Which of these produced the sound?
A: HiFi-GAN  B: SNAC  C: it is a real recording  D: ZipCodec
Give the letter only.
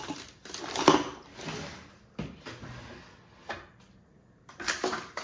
C